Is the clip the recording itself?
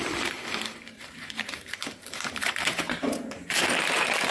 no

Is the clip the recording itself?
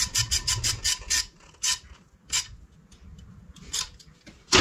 yes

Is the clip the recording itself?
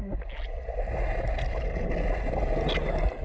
yes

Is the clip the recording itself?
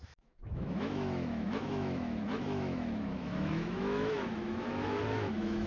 no